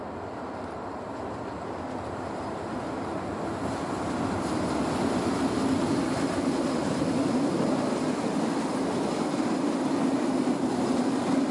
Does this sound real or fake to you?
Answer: real